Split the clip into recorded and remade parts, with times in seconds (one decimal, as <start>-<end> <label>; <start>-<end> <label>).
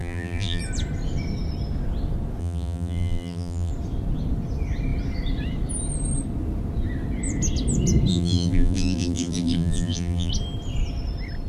0.0-0.6 remade; 0.6-2.4 recorded; 2.4-3.7 remade; 3.7-8.1 recorded; 8.1-10.3 remade; 10.3-11.5 recorded